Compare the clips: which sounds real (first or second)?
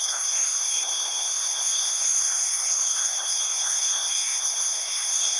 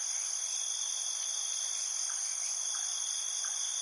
second